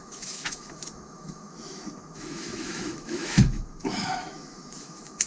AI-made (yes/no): yes